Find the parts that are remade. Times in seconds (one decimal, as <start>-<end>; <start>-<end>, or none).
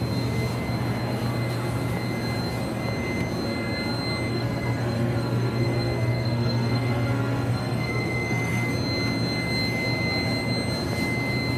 4.3-8.7